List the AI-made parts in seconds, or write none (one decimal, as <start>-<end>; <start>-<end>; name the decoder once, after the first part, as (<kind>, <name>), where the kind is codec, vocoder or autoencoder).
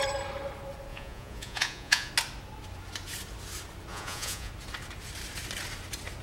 0.9-2.1 (vocoder, Vocos); 3.9-4.5